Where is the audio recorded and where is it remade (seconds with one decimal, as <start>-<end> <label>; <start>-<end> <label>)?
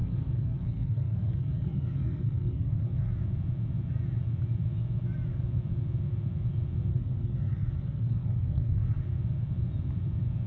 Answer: 0.0-3.1 remade; 3.1-6.9 recorded; 6.9-9.0 remade; 9.0-10.5 recorded